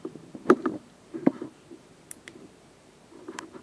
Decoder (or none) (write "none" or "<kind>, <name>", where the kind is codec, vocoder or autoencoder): vocoder, BigVGAN v2